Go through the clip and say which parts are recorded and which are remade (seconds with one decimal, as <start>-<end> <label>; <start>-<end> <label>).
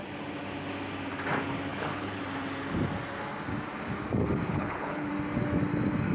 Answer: 0.0-1.7 recorded; 1.7-2.2 remade; 2.2-4.5 recorded; 4.5-5.1 remade; 5.1-6.1 recorded